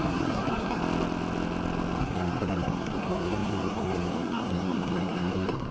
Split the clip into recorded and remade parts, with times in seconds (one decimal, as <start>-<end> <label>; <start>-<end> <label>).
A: 0.0-0.8 remade; 0.8-2.0 recorded; 2.0-5.7 remade